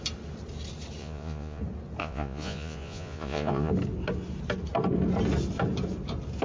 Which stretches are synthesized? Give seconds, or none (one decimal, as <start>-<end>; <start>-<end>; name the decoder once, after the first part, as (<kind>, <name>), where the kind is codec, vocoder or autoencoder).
1.0-1.6 (vocoder, Vocos); 2.0-3.7